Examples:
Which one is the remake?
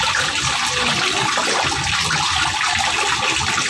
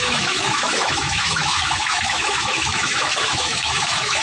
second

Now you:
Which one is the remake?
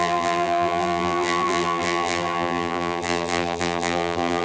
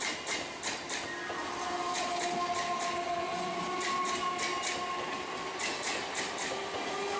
first